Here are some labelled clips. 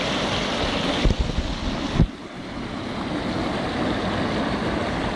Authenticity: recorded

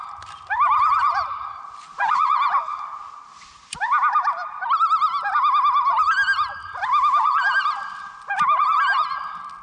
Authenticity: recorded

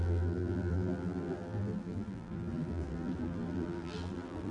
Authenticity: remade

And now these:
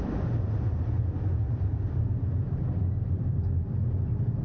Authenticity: recorded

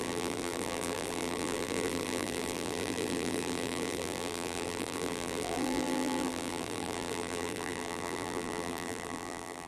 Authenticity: remade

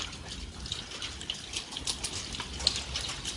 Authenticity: recorded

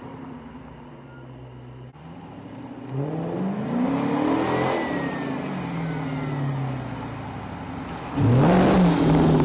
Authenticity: recorded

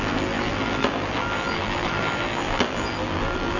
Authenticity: remade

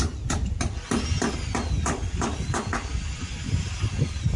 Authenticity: recorded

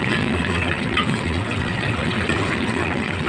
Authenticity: remade